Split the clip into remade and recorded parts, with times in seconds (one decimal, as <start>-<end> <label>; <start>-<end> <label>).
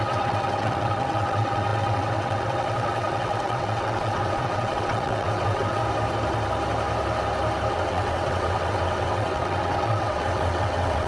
0.0-5.8 remade; 5.8-7.7 recorded; 7.7-11.1 remade